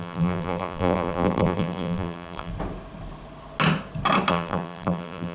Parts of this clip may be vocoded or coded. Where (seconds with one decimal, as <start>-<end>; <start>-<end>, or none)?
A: 0.0-2.5; 4.3-5.3